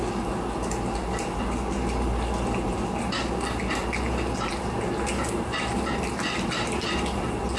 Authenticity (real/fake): real